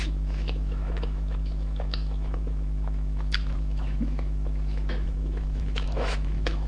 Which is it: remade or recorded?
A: remade